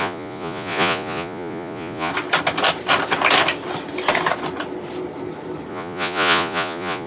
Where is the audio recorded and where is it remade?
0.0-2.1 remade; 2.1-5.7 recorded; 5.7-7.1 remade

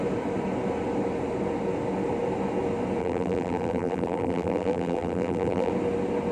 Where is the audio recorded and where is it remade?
0.0-3.0 recorded; 3.0-5.7 remade; 5.7-6.3 recorded

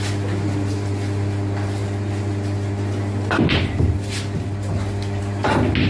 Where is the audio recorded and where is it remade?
0.0-5.9 recorded